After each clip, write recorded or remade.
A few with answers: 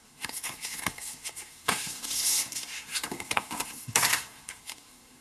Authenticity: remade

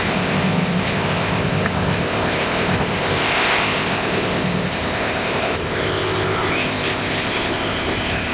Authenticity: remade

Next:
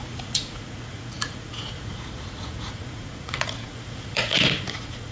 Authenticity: remade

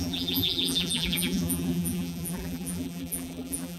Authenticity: remade